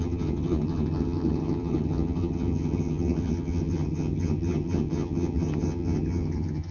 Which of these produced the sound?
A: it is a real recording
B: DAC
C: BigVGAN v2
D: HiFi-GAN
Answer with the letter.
D